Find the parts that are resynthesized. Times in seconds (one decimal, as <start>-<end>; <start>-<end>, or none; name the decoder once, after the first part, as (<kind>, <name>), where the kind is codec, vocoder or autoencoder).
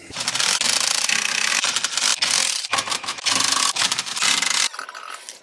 none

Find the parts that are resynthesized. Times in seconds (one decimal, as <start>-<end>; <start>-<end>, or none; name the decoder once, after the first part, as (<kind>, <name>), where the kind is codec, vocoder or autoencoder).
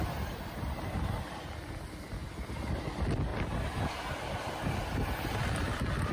none